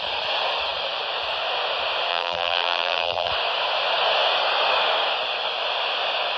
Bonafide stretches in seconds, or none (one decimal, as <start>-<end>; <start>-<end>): 0.0-2.1; 3.3-6.4